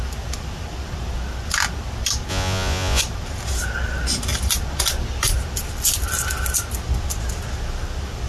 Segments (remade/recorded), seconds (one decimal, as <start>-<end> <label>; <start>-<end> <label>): 0.0-2.3 recorded; 2.3-3.0 remade; 3.0-8.3 recorded